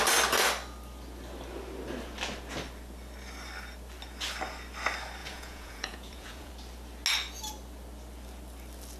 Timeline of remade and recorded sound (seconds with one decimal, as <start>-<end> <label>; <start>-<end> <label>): 0.0-5.2 recorded; 5.2-6.5 remade; 6.5-9.0 recorded